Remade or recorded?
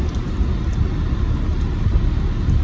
recorded